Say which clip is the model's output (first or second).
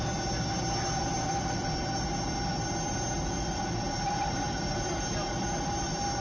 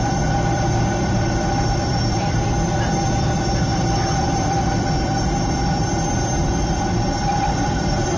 second